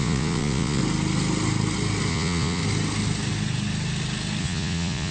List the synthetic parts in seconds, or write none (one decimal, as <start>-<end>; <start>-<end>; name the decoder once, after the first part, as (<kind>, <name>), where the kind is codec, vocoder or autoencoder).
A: 0.0-0.8 (vocoder, Vocos); 2.1-2.6; 4.4-5.1